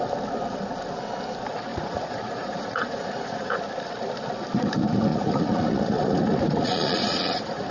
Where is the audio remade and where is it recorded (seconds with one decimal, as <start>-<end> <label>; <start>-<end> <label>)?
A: 0.0-1.7 recorded; 1.7-3.6 remade; 3.6-5.1 recorded; 5.1-7.7 remade